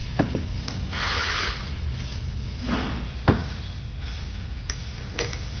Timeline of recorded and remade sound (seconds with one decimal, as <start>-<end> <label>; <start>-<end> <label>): 0.0-0.6 remade; 0.6-1.2 recorded; 1.2-2.6 remade; 2.6-5.6 recorded